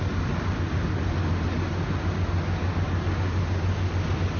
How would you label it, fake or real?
real